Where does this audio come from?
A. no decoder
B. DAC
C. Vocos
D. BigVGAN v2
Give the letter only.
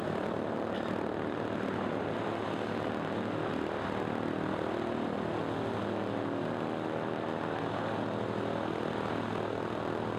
A